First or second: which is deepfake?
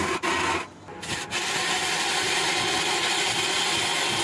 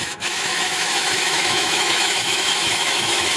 second